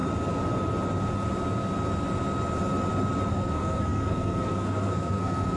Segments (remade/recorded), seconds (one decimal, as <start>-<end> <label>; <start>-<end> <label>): 0.0-3.3 recorded; 3.3-5.6 remade